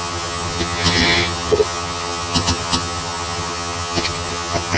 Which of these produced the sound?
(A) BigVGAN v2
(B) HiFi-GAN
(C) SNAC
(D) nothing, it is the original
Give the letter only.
B